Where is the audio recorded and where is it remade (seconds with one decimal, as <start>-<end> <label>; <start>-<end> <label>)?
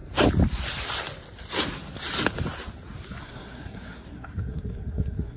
0.0-3.2 recorded; 3.2-5.4 remade